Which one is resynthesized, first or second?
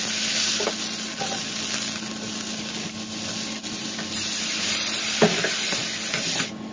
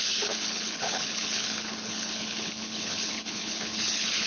second